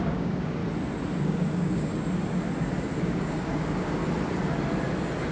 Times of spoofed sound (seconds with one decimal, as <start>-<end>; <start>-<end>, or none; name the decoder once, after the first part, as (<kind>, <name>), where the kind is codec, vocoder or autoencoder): 0.0-0.6 (codec, DAC); 1.2-1.9; 3.0-4.0